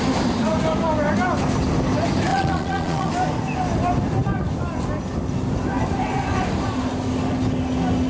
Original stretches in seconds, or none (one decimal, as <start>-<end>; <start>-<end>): 0.0-2.3; 3.1-8.1

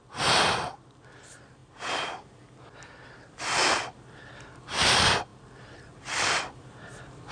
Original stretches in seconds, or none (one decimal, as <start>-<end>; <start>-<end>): 0.0-7.3

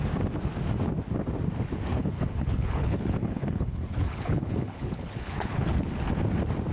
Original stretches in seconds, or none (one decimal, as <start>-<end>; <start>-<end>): 0.0-1.9; 5.9-6.7

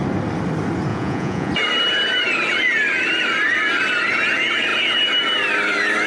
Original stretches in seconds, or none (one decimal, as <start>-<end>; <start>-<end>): 0.0-0.9; 1.5-6.1

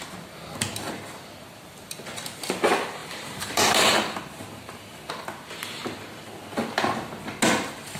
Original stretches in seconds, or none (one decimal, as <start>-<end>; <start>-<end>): 0.0-3.0; 5.1-8.0

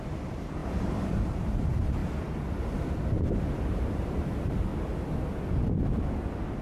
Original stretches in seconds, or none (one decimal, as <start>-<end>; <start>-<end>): 0.6-1.1; 2.0-3.7; 4.7-6.6

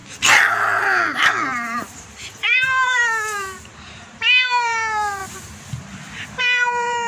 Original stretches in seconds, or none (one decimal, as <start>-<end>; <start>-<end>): 0.0-0.8; 5.2-6.4